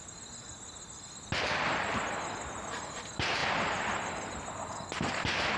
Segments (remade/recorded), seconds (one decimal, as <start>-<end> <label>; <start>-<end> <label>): 0.0-5.6 recorded